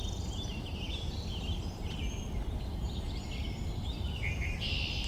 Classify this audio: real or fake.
real